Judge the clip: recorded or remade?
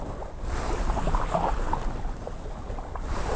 recorded